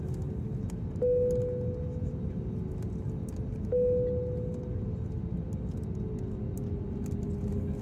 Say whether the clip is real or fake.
real